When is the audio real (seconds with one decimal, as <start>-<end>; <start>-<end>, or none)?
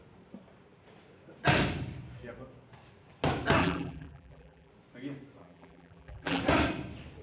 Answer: 0.0-3.6; 4.7-5.4; 6.4-7.2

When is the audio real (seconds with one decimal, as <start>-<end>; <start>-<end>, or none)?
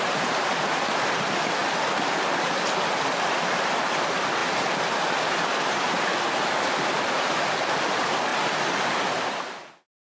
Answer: 4.4-6.0; 8.3-9.1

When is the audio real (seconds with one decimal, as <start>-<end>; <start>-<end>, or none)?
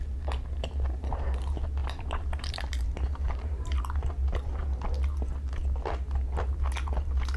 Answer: 0.0-1.8; 3.8-7.4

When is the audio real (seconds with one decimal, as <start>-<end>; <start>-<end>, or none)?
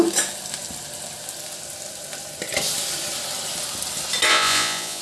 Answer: 0.0-4.3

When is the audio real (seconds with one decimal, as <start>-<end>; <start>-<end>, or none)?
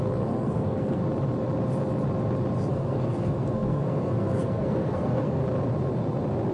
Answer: 1.0-2.7; 5.4-6.5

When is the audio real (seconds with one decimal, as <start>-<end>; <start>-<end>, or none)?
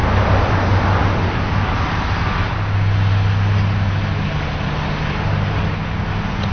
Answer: 0.0-6.5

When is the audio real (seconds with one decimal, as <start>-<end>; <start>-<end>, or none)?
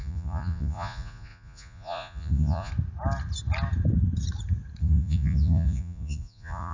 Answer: 2.7-4.8